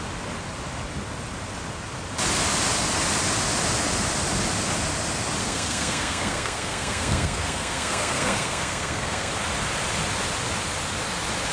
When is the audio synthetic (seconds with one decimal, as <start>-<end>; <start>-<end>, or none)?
5.4-9.3